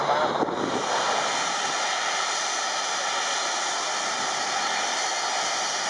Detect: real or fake real